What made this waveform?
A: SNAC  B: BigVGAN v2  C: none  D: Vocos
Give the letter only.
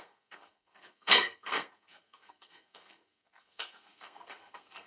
A